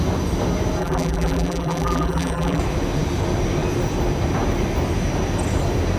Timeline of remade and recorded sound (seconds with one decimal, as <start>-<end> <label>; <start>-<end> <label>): 0.0-0.8 recorded; 0.8-2.6 remade; 2.6-6.0 recorded